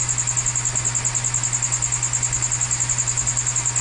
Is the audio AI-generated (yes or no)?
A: no